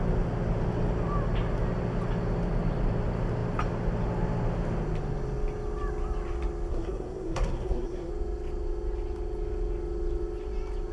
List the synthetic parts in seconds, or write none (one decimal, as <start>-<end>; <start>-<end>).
6.7-8.1